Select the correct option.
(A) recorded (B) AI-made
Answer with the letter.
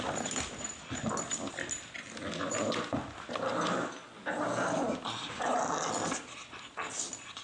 A